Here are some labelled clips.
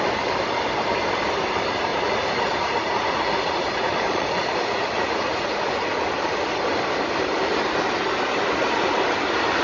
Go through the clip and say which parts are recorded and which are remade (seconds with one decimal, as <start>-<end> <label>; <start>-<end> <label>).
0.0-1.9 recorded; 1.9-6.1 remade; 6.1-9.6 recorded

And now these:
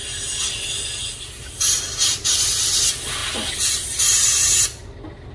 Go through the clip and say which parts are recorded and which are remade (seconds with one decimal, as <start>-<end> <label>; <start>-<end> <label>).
0.0-5.3 recorded

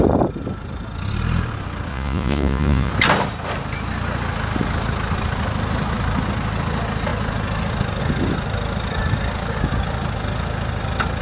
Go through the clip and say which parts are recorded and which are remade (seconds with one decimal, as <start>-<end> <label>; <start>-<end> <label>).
0.0-1.9 recorded; 1.9-2.9 remade; 2.9-11.2 recorded

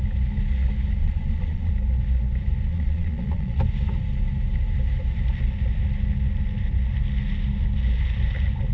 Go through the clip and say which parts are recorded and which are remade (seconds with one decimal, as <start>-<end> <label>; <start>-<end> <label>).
0.0-1.0 recorded; 1.0-1.7 remade; 1.7-2.7 recorded; 2.7-3.6 remade; 3.6-8.7 recorded

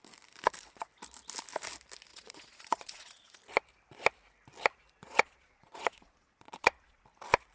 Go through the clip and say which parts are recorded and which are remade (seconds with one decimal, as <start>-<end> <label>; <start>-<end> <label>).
0.0-2.1 recorded; 2.1-3.3 remade; 3.3-5.0 recorded; 5.0-7.0 remade; 7.0-7.5 recorded

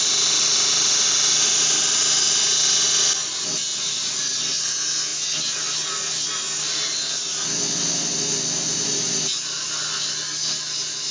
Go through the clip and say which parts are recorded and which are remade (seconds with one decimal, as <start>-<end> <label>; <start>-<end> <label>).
0.0-3.7 recorded; 3.7-4.4 remade; 4.4-11.1 recorded

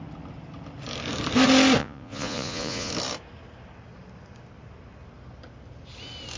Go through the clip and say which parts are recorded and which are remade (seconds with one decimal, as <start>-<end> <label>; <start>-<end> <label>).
0.0-1.8 recorded; 1.8-2.9 remade; 2.9-6.4 recorded